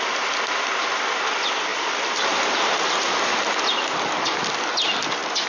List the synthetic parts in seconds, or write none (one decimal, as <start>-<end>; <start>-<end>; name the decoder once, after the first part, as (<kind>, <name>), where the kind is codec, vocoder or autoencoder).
1.7-4.0 (vocoder, BigVGAN v2)